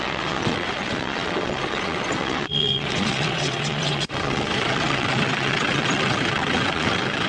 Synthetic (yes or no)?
yes